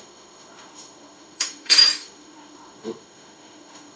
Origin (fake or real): fake